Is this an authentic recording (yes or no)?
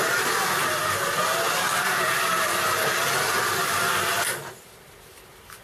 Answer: yes